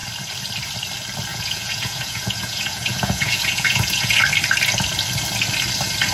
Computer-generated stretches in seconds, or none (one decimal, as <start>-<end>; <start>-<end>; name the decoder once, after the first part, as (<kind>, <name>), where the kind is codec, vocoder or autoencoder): 1.3-4.2 (vocoder, Vocos)

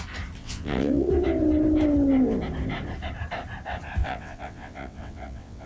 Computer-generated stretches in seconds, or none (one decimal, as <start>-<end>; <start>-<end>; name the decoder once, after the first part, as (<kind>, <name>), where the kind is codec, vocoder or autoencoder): 0.4-1.1 (vocoder, WaveNeXt); 4.0-5.7

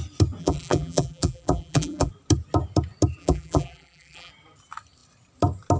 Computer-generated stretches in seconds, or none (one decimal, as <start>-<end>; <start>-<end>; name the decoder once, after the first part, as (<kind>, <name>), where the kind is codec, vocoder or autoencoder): 0.4-2.1 (vocoder, BigVGAN v2); 3.2-4.3